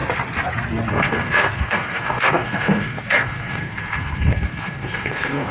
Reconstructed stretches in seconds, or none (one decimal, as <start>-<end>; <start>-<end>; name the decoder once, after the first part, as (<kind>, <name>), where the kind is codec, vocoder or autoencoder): 0.9-5.5 (codec, SNAC)

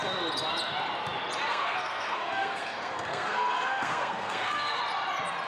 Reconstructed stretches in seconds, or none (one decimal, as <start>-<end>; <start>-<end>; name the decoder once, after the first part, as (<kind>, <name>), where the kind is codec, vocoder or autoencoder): 1.5-4.8 (codec, SNAC)

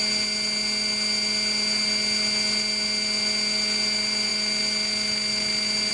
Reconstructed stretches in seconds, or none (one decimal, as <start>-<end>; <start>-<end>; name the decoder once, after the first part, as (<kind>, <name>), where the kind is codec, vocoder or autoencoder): none

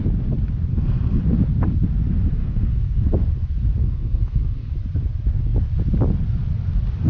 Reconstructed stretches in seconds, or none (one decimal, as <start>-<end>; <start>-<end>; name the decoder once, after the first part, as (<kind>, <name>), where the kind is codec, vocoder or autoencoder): 0.7-1.2 (codec, SNAC); 2.4-3.1; 3.8-4.7

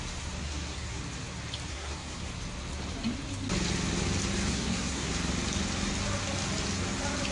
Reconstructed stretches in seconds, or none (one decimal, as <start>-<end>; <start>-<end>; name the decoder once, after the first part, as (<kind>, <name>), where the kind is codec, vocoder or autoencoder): 0.4-1.0 (codec, SNAC); 1.7-2.3; 4.5-5.1

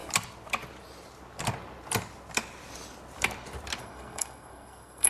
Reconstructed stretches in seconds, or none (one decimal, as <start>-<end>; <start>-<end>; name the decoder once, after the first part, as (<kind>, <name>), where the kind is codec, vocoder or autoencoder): 3.8-5.1 (codec, SNAC)

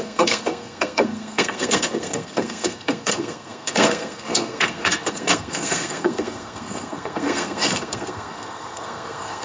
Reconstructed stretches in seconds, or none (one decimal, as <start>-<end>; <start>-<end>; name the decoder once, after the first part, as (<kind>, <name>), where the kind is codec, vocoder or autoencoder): 0.0-9.4 (codec, SNAC)

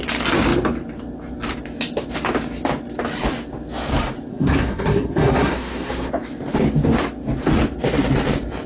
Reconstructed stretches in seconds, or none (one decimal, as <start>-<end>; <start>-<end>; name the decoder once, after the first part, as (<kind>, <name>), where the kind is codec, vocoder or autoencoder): 4.3-6.1 (codec, SNAC)